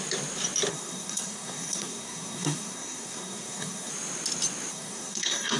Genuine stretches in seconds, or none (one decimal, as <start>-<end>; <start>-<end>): 0.0-0.7; 3.9-4.7